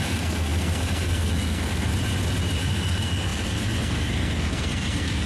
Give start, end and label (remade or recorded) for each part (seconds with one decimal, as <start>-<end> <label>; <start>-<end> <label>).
0.0-1.9 remade; 1.9-2.6 recorded; 2.6-5.3 remade